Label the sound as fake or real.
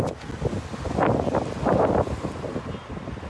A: real